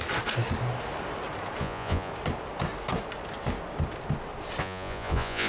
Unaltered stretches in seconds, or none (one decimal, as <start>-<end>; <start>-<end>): 0.0-1.6; 2.1-4.6